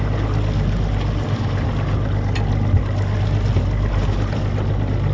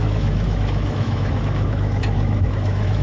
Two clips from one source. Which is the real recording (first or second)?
first